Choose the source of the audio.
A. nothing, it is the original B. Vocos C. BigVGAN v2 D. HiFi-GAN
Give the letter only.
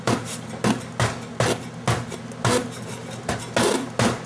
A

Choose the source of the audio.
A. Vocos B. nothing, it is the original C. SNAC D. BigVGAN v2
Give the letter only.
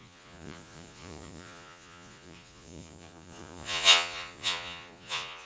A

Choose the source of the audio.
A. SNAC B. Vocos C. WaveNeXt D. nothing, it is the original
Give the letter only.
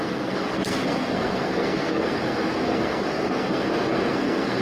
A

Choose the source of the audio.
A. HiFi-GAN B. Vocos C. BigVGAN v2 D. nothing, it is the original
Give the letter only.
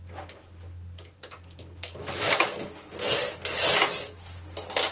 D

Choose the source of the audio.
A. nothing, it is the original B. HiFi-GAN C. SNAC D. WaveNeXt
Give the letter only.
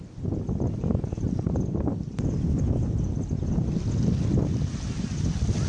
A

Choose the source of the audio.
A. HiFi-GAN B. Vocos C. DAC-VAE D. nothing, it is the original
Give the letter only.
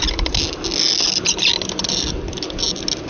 D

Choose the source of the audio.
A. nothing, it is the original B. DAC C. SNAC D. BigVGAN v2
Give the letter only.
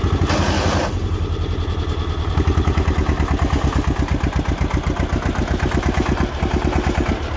A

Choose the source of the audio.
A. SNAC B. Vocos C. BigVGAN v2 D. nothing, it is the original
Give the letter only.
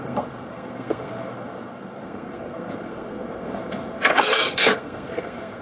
A